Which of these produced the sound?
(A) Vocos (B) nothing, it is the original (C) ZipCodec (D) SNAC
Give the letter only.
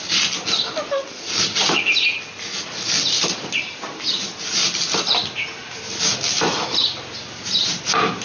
B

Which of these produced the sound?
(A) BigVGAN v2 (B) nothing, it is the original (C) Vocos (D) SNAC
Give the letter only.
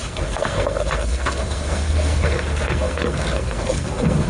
D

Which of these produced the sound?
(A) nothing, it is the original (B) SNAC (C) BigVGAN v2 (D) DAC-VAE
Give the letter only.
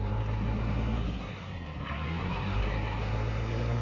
B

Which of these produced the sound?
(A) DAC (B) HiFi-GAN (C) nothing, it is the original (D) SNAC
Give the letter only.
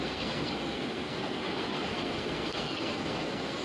D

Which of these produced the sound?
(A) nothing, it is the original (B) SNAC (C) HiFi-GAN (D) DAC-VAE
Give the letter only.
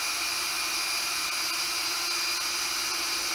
A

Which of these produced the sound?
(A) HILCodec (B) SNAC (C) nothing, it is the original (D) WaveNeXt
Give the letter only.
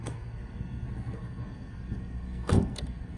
B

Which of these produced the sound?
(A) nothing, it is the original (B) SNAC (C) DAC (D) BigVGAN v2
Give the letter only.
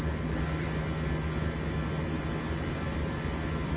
A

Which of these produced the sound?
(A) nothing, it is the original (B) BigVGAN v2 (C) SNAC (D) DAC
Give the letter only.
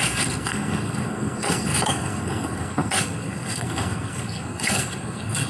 C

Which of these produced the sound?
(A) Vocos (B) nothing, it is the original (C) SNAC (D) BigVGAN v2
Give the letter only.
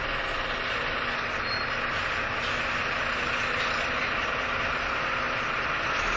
B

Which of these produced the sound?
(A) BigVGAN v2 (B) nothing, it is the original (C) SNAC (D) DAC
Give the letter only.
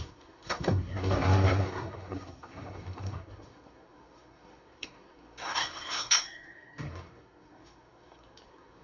C